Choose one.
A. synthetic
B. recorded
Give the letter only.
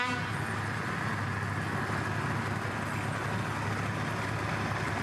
B